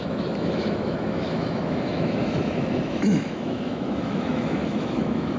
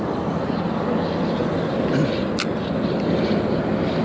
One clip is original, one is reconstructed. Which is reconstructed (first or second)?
first